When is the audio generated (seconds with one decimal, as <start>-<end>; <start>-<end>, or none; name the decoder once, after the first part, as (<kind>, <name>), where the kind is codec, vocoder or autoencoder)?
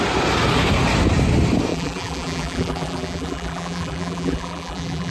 1.7-5.1 (vocoder, BigVGAN v2)